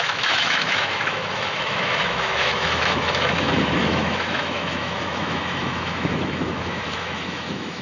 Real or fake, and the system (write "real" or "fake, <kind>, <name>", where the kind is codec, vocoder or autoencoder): fake, autoencoder, DAC-VAE